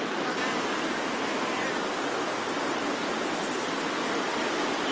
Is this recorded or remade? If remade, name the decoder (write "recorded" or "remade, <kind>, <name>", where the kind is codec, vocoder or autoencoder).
recorded